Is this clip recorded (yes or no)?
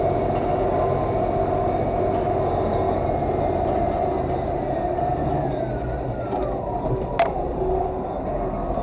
yes